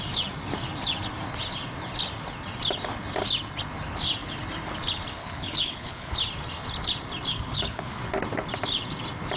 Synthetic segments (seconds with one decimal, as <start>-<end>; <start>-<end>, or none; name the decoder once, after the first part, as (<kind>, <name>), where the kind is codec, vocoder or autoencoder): 5.2-6.1 (codec, HILCodec); 7.3-8.0